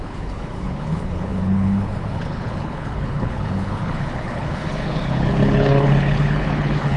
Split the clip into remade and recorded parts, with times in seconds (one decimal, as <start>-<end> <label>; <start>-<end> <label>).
0.0-7.0 remade